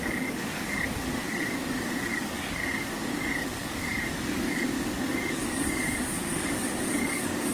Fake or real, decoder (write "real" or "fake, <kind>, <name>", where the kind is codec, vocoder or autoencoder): fake, codec, DAC